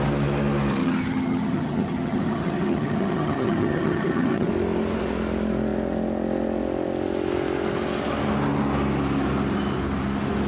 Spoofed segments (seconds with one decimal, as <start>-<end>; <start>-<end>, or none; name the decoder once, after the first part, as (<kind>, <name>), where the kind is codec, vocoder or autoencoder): 0.8-4.5 (vocoder, HiFi-GAN)